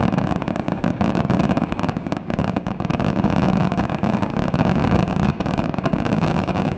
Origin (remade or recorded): remade